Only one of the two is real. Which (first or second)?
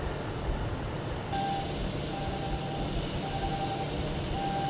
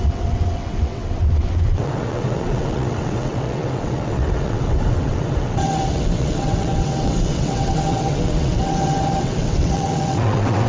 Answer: first